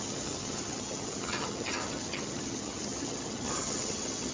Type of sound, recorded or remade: remade